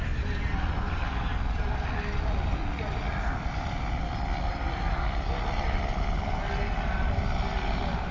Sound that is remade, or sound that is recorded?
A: recorded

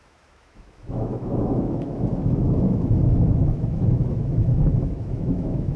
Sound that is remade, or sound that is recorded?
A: remade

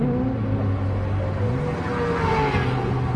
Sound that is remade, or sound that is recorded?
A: recorded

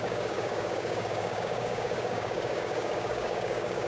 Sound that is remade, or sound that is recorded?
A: remade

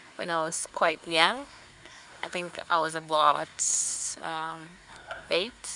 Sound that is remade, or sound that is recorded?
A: remade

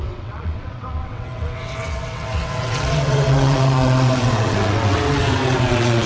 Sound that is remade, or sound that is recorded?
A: remade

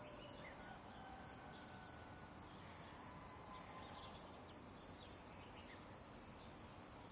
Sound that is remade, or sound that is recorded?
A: recorded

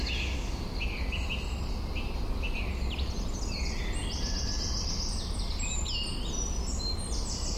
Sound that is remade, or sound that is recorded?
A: recorded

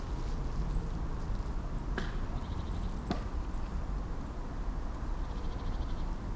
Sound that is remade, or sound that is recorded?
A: recorded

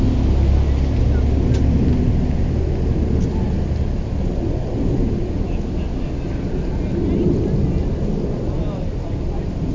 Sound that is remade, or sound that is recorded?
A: recorded